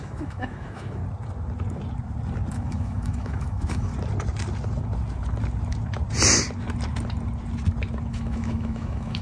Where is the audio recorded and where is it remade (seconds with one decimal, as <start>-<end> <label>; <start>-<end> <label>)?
0.0-1.0 remade; 1.0-2.5 recorded; 2.5-3.9 remade; 3.9-8.1 recorded; 8.1-9.2 remade